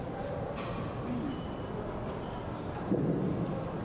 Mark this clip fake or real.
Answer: real